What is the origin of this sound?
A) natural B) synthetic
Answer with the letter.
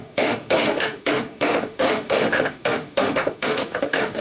B